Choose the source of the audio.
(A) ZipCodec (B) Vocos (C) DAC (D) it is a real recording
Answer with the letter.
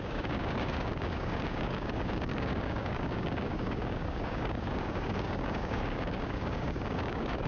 C